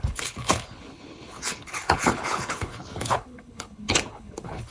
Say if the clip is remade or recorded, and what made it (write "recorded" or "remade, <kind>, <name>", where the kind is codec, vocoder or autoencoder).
remade, codec, HILCodec